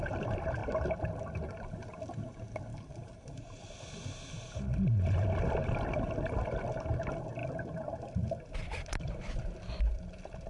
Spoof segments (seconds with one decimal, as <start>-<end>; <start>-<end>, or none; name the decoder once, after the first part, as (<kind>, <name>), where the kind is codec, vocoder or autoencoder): 2.7-3.2 (vocoder, BigVGAN v2); 7.4-9.0